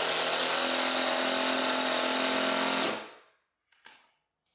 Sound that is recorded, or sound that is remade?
recorded